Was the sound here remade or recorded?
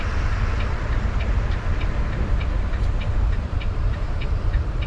remade